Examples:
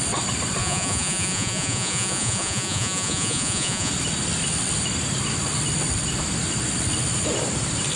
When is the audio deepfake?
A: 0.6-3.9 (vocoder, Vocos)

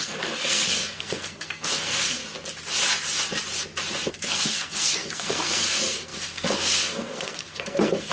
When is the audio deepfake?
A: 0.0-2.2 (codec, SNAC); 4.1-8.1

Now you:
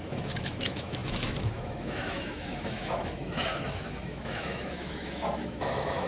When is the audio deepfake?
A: 0.0-6.1 (autoencoder, DAC-VAE)

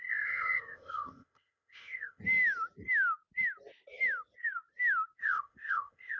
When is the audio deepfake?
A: 0.0-2.2 (codec, ZipCodec); 5.2-6.2

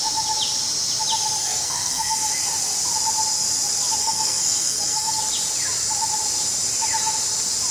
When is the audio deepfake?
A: 1.4-2.3 (codec, SNAC); 4.0-5.2